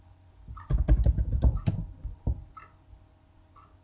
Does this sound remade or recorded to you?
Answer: recorded